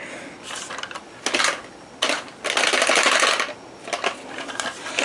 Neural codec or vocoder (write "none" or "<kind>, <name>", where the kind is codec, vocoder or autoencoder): none